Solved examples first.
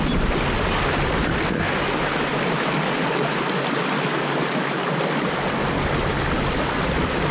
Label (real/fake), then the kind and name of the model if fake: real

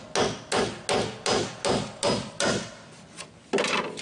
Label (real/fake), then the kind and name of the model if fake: real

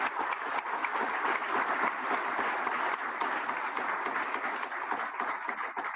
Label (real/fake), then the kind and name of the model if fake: real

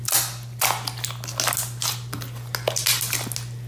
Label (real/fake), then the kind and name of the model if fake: real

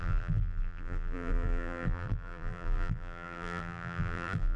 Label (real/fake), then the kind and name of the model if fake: fake, vocoder, BigVGAN v2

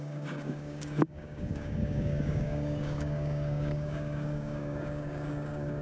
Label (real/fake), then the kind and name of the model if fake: fake, codec, DAC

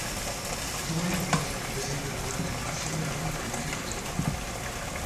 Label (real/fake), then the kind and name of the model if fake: real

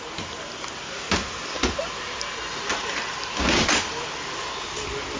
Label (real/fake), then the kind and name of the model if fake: real